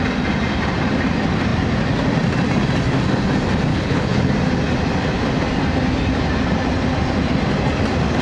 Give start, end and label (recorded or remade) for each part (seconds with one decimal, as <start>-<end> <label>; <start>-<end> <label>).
0.0-3.7 recorded; 3.7-4.3 remade; 4.3-8.2 recorded